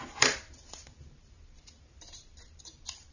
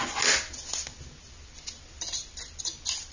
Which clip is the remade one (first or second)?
first